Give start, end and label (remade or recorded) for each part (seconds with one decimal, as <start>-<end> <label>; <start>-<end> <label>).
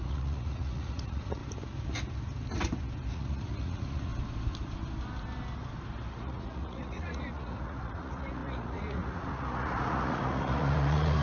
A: 0.0-1.4 remade; 1.4-3.1 recorded; 3.1-4.1 remade; 4.1-6.1 recorded; 6.1-11.2 remade